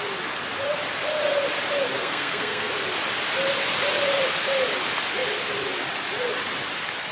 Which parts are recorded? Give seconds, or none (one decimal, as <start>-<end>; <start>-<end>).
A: 0.0-2.0; 2.7-7.1